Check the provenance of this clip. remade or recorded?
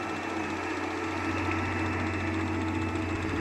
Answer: recorded